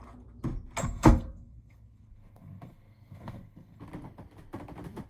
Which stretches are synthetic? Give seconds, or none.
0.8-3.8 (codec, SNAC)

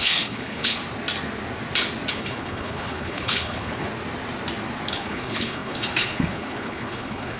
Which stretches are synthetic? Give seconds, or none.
0.0-0.8 (codec, HILCodec); 2.1-3.9; 4.9-7.4

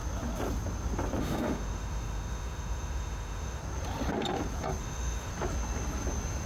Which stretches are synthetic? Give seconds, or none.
1.2-3.6 (autoencoder, DAC-VAE); 4.8-5.3

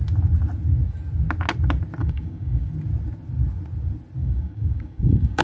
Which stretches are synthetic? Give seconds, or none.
2.0-2.7 (codec, DAC); 4.2-5.4

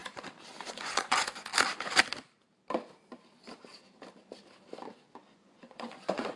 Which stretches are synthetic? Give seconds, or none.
0.7-1.5 (vocoder, Vocos); 5.3-6.4